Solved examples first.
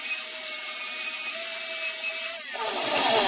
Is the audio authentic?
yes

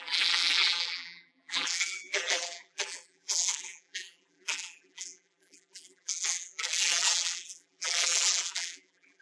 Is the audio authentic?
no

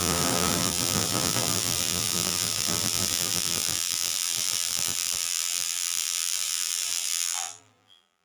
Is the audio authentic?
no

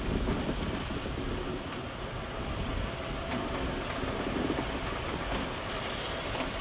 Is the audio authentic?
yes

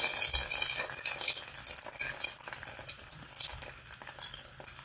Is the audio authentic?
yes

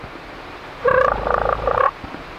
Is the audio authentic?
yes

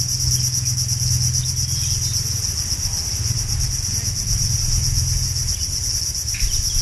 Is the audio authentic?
yes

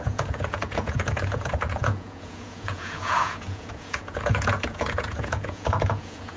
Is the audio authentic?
no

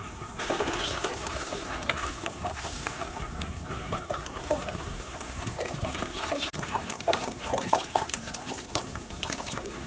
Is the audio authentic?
no